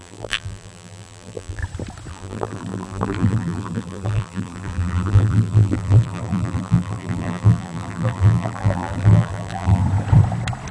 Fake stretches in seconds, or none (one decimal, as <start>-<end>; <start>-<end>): 0.0-1.6; 2.1-9.8